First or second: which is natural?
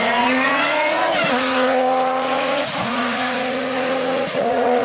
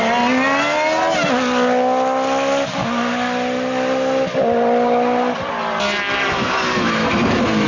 second